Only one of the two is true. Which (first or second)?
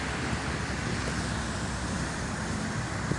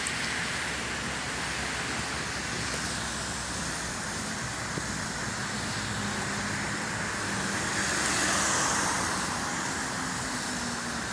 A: second